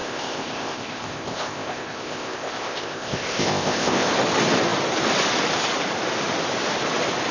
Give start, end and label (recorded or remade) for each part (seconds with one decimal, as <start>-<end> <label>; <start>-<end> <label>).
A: 0.0-4.1 remade; 4.1-7.3 recorded